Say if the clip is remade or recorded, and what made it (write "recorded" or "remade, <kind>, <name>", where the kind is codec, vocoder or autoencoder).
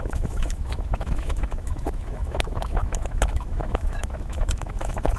remade, autoencoder, DAC-VAE